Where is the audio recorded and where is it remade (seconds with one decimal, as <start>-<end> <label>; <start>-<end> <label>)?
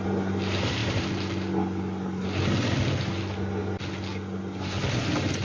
0.0-5.4 recorded